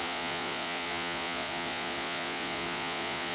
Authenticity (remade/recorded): remade